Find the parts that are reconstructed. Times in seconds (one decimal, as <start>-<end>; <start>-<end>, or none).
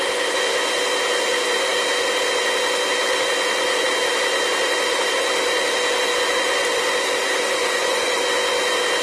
7.6-8.2